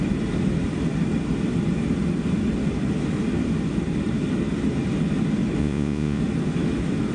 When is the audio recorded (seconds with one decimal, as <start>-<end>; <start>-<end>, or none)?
0.0-5.6; 6.2-7.1